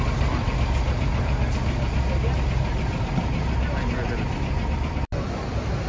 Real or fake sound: real